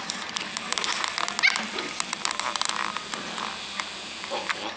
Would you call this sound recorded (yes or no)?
yes